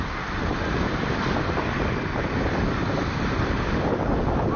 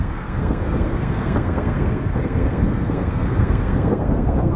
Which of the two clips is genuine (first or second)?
first